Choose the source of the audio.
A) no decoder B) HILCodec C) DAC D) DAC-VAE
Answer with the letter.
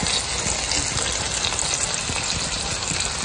A